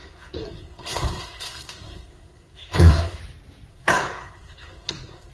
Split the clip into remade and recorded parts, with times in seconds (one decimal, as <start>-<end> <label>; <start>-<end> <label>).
0.0-3.2 remade; 3.2-3.7 recorded; 3.7-5.3 remade